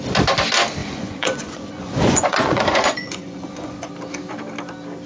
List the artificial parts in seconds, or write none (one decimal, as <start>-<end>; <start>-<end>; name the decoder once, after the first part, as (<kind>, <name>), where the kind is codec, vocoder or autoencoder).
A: 0.8-3.9 (vocoder, Vocos)